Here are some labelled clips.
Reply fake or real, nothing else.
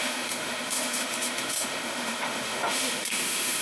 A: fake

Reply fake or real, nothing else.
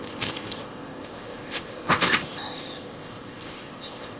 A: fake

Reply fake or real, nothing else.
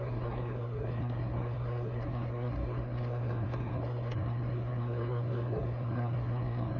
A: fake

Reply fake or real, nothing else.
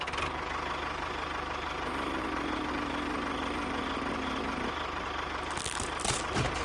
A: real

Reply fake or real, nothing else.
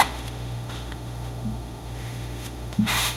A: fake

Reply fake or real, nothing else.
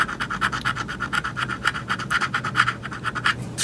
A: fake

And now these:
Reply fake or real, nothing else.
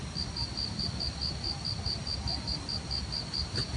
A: real